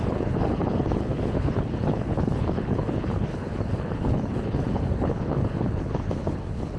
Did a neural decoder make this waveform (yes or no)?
yes